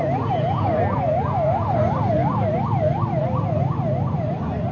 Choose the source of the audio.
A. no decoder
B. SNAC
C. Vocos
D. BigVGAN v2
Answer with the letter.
A